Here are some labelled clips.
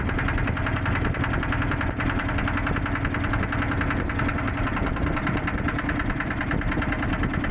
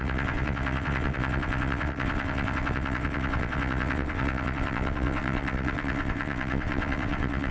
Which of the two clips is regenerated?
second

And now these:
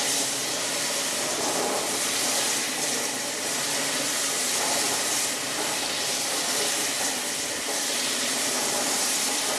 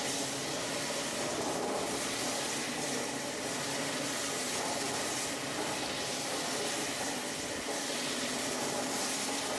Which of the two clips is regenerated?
first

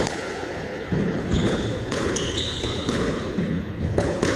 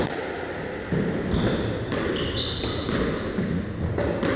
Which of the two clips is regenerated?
first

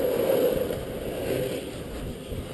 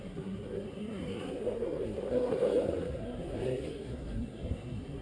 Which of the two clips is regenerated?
second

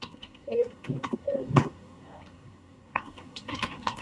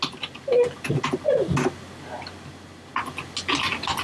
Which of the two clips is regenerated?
first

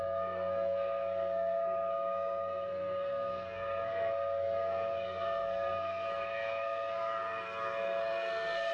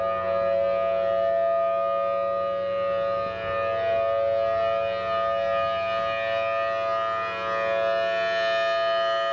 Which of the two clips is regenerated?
first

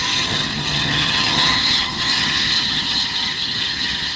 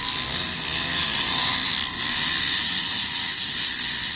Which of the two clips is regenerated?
first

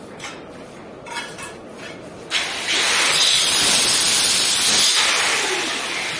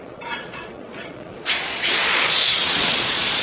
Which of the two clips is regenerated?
second